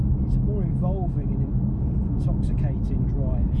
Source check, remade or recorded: recorded